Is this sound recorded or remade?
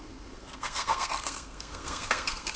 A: remade